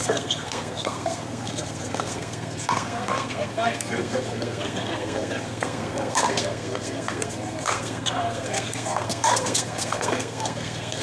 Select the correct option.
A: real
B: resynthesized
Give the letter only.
B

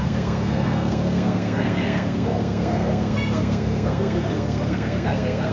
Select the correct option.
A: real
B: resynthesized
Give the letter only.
B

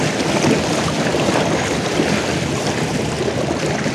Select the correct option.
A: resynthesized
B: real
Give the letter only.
B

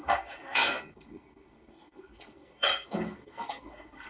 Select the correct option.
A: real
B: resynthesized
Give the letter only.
B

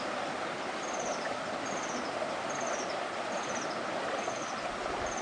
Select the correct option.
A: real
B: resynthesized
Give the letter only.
A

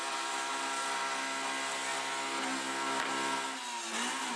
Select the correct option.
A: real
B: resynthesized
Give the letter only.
A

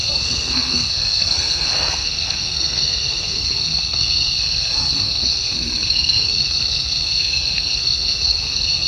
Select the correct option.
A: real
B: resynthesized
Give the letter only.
B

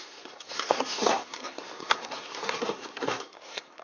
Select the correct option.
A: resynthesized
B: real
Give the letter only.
A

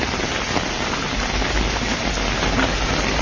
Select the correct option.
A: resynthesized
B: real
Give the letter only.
B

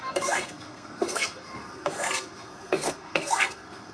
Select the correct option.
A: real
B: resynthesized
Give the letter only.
B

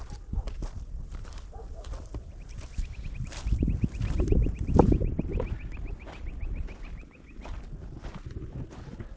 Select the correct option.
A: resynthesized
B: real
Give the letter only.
B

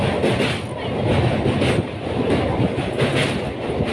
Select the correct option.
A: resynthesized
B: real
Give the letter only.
B